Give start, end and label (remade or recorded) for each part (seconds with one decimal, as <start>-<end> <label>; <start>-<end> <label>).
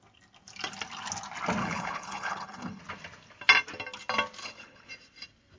0.0-1.6 recorded; 1.6-2.8 remade; 2.8-4.4 recorded; 4.4-4.9 remade; 4.9-5.6 recorded